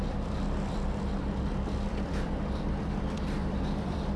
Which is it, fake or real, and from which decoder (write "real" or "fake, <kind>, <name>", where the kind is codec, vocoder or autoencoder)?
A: fake, vocoder, BigVGAN v2